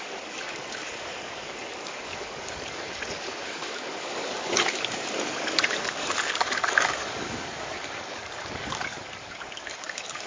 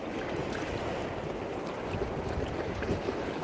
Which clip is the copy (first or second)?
first